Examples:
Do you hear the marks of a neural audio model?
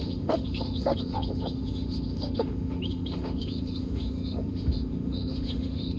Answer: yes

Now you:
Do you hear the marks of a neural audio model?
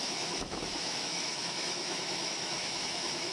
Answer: yes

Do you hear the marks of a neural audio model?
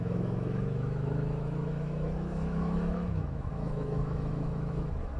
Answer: yes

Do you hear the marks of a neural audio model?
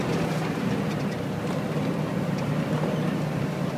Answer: no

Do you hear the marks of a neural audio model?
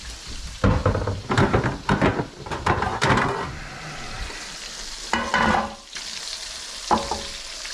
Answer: no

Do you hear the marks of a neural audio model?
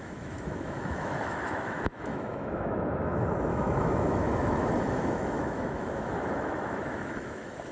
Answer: yes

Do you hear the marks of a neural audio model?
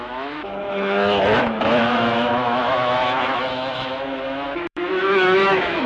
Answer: yes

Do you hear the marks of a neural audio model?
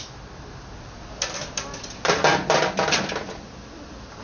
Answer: no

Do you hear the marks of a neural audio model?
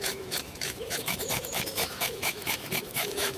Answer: yes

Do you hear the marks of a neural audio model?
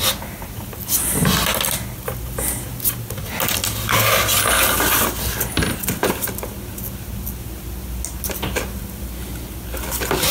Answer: no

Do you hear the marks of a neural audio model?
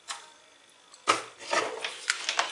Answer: no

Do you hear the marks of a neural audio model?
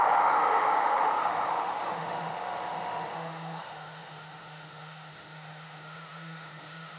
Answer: yes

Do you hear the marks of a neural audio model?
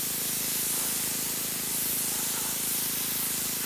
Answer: no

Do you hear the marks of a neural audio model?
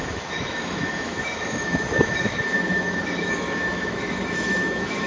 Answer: yes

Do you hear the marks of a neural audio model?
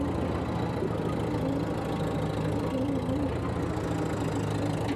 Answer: no